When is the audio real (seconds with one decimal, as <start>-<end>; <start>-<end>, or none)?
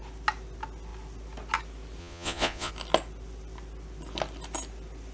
0.0-2.0; 2.7-5.1